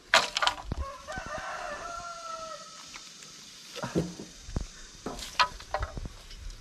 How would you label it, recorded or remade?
recorded